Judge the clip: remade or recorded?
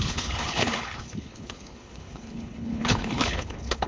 remade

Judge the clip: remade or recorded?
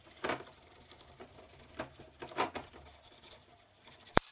recorded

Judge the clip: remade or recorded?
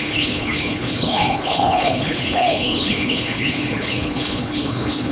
remade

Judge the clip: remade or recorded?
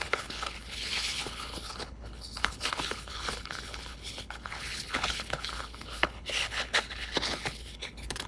remade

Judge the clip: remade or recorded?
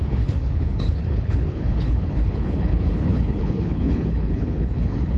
remade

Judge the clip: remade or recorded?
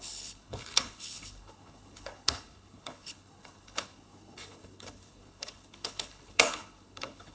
remade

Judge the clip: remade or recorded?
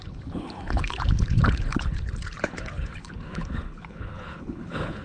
remade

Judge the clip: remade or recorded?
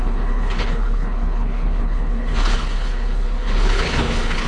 remade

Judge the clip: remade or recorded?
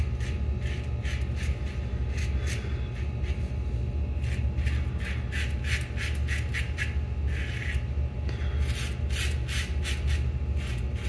recorded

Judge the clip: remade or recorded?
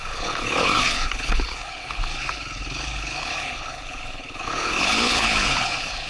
remade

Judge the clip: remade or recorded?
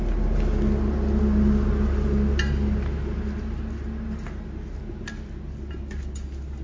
recorded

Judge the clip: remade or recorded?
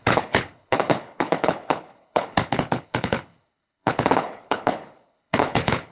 remade